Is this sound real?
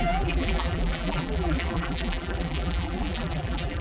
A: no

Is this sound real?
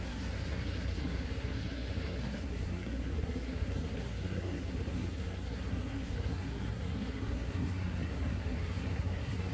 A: no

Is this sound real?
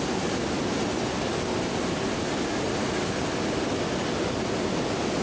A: yes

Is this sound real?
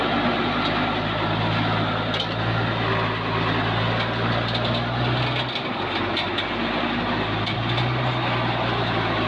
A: yes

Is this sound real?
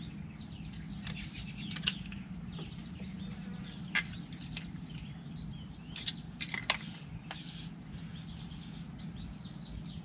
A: yes